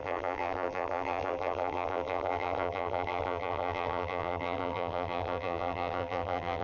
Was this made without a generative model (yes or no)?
no